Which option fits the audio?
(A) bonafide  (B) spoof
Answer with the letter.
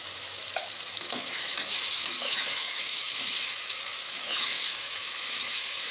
B